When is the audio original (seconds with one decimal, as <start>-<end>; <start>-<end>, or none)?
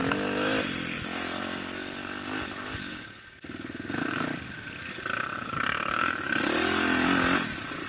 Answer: 0.0-7.9